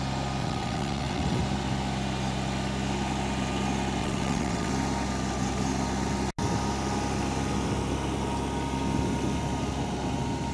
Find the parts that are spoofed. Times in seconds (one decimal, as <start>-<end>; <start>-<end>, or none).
0.4-1.4; 4.0-4.7